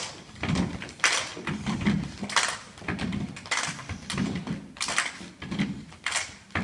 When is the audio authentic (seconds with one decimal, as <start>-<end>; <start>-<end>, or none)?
0.0-6.6